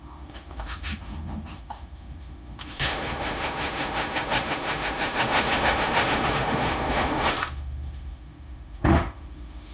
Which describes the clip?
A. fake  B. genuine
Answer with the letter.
A